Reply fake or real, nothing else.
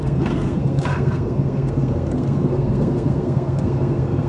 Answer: fake